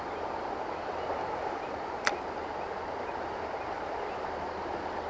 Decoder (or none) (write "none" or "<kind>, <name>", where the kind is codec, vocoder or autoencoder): none